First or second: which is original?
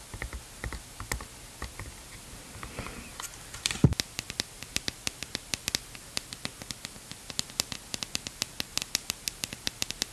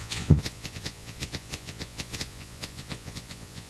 first